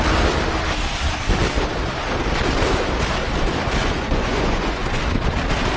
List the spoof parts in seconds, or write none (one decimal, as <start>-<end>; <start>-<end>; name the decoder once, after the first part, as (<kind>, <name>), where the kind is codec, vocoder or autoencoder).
3.8-5.0 (vocoder, Vocos)